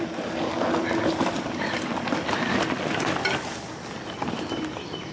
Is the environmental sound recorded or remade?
remade